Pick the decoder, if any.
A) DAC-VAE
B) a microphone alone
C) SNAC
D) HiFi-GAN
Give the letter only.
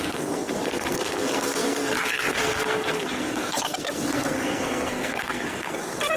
C